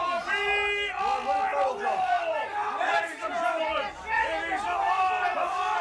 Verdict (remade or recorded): recorded